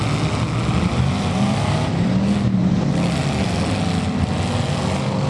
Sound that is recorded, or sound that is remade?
recorded